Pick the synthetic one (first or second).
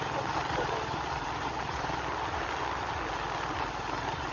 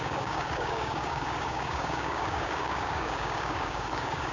second